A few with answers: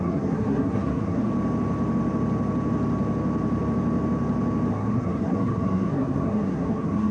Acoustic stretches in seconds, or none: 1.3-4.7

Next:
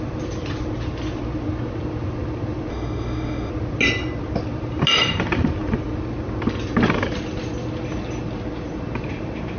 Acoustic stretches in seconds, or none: 0.0-2.7; 3.5-9.6

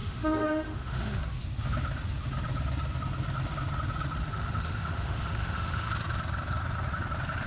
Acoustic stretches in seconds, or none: 1.2-4.2; 5.9-7.5

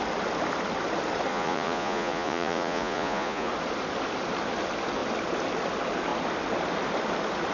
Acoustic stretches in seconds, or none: 0.0-1.3; 3.5-7.5

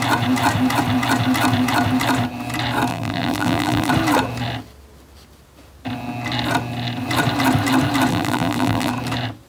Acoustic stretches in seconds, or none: 0.0-2.9; 3.9-8.1; 8.9-9.5

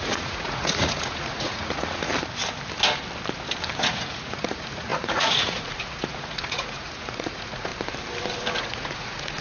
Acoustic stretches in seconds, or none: 2.1-3.8; 7.7-8.6